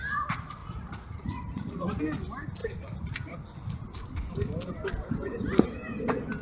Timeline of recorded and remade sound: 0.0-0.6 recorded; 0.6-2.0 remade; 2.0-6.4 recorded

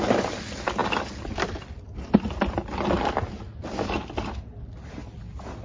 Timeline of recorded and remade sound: 0.0-5.6 recorded

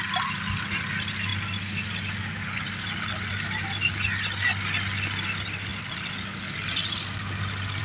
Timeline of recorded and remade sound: 0.0-7.8 recorded